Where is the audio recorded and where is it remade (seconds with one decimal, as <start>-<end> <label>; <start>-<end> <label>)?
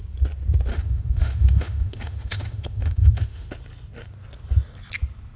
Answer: 0.0-0.7 recorded; 0.7-3.5 remade; 3.5-5.4 recorded